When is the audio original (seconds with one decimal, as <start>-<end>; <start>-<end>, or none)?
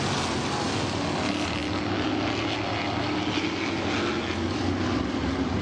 0.0-5.6